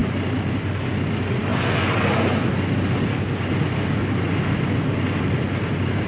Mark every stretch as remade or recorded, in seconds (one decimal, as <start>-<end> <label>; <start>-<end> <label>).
0.0-6.1 recorded